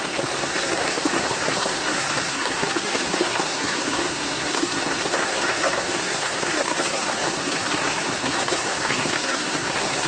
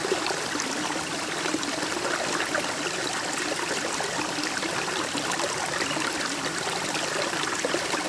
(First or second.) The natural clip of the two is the second